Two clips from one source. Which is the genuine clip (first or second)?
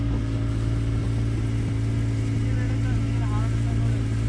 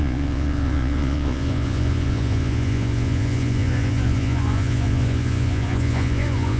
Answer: first